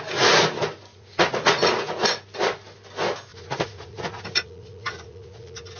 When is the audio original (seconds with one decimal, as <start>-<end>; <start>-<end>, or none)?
0.0-0.9; 1.9-3.3